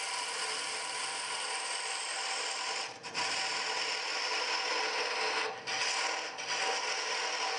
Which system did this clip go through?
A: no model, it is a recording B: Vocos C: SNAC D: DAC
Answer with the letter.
A